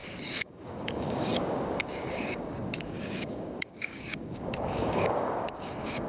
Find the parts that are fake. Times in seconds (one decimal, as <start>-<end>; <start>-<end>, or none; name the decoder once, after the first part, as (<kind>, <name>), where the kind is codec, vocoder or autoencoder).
0.0-6.1 (codec, DAC)